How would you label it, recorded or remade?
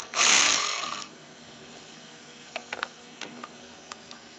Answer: remade